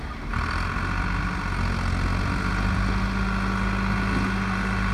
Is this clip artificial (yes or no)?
no